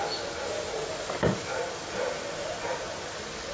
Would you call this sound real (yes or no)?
yes